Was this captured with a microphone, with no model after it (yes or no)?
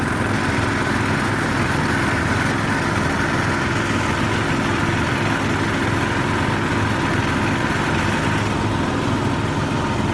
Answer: yes